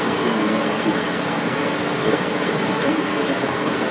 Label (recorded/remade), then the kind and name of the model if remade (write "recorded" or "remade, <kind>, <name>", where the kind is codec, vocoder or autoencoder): remade, codec, SNAC